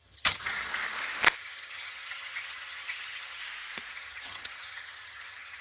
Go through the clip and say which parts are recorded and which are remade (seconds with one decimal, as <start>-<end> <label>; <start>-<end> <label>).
0.0-0.7 remade; 0.7-1.4 recorded; 1.4-3.4 remade; 3.4-3.9 recorded; 3.9-5.6 remade